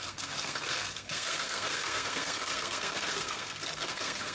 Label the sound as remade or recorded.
remade